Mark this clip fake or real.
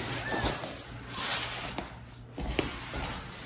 real